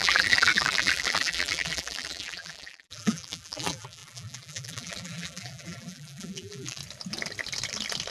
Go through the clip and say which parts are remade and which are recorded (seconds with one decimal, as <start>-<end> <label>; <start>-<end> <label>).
0.0-6.8 remade; 6.8-8.1 recorded